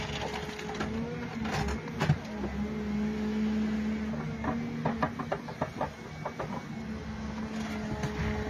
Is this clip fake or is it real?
real